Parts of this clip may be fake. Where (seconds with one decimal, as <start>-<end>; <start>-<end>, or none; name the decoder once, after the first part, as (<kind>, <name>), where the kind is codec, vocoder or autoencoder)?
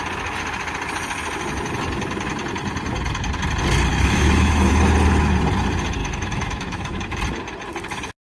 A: 3.9-4.7 (autoencoder, DAC-VAE); 6.0-7.2